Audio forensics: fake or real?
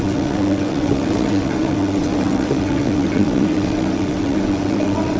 fake